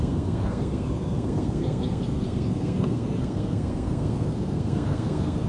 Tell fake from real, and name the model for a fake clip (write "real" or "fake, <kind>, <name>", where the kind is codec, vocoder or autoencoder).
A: fake, codec, SNAC